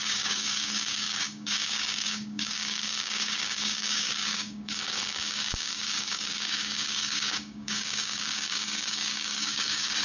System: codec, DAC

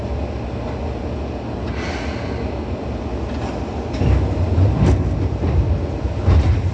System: none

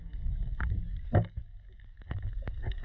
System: codec, DAC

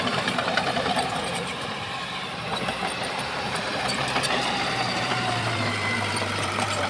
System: vocoder, BigVGAN v2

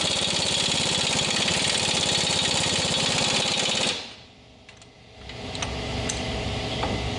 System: none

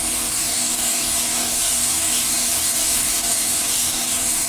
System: codec, DAC